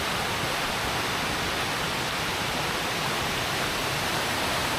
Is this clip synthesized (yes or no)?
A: no